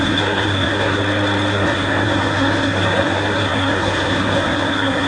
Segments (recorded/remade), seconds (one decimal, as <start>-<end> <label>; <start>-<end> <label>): 0.0-1.0 remade; 1.0-1.5 recorded; 1.5-5.1 remade